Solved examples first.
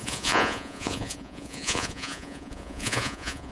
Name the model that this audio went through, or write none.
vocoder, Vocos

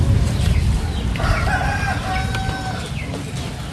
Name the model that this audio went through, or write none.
none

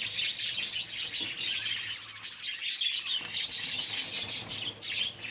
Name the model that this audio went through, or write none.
none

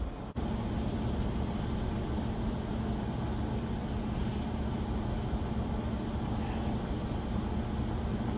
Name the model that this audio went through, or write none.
none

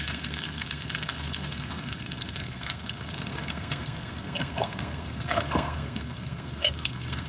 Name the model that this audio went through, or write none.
codec, SNAC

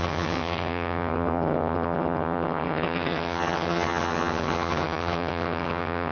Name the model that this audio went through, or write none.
vocoder, HiFi-GAN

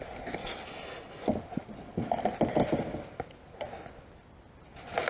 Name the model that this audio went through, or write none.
none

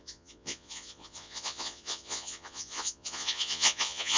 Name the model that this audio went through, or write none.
vocoder, Vocos